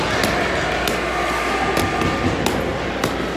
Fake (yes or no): no